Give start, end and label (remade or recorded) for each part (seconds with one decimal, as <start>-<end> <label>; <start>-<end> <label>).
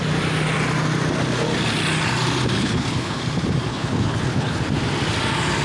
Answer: 0.0-2.6 recorded; 2.6-3.2 remade; 3.2-3.7 recorded; 3.7-4.6 remade; 4.6-5.6 recorded